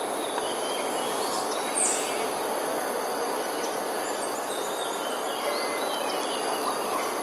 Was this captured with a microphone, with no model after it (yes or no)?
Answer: yes